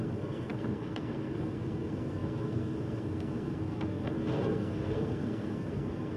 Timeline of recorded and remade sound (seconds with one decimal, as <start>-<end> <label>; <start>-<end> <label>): 0.0-6.2 remade